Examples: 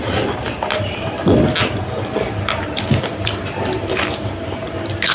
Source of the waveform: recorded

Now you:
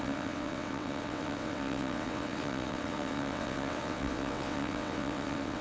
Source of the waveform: remade